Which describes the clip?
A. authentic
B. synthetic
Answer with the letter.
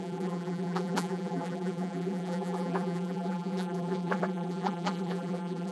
B